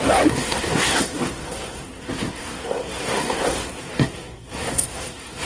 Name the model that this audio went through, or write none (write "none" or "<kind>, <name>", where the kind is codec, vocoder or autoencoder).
codec, SNAC